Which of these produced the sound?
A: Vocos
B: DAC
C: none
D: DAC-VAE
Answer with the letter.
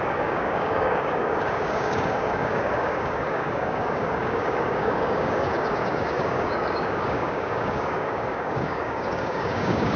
B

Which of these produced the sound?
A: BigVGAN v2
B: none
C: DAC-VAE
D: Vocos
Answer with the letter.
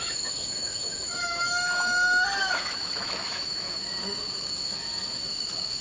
C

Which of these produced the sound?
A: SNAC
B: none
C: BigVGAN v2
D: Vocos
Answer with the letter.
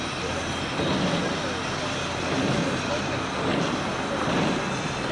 B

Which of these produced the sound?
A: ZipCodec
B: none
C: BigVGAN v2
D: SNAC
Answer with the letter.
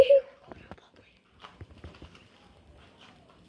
C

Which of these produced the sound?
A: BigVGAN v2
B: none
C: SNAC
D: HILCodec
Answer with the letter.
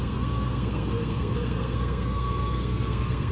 C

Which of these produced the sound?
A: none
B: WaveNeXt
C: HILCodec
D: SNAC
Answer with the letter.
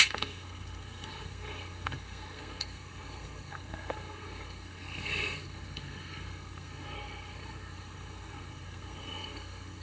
D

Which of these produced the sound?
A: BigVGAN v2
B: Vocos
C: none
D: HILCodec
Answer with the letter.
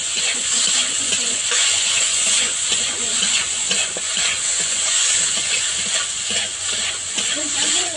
B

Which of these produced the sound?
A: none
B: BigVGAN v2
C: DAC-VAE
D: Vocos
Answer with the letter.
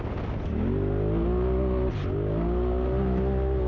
A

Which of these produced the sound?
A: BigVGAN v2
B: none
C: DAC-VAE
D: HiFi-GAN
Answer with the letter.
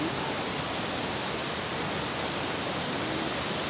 B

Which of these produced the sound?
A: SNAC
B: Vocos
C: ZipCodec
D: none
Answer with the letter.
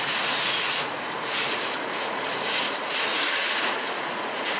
B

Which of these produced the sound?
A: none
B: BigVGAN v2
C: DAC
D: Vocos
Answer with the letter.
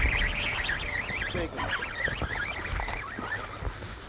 A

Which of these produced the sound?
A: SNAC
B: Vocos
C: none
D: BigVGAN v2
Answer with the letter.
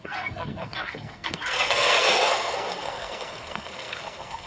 A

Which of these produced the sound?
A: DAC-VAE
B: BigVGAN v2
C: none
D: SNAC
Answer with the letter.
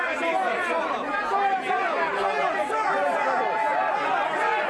C